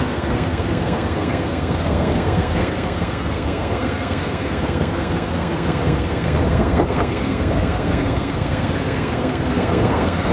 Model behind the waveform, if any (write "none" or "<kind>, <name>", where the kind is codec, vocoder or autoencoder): codec, SNAC